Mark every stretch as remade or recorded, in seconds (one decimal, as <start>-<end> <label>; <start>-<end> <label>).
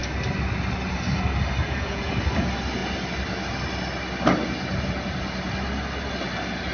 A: 0.0-1.6 recorded; 1.6-2.1 remade; 2.1-6.7 recorded